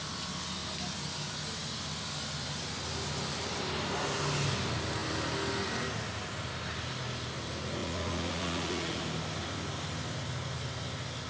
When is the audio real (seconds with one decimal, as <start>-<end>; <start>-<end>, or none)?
0.0-7.8; 9.0-11.3